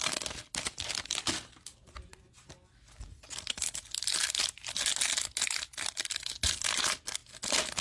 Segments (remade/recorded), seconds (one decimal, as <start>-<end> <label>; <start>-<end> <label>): 0.0-7.8 recorded